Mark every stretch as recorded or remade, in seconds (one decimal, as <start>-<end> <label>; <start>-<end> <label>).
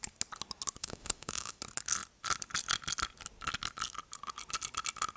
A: 0.0-0.8 recorded; 0.8-1.6 remade; 1.6-5.2 recorded